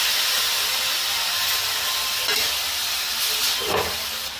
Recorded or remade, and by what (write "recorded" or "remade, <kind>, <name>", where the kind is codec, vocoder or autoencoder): recorded